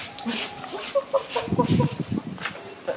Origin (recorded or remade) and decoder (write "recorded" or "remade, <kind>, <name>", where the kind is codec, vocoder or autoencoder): recorded